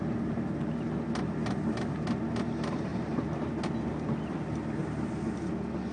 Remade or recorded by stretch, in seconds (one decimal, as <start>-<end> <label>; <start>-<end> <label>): 0.0-5.9 recorded